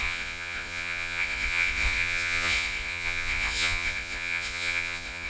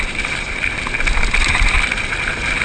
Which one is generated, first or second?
first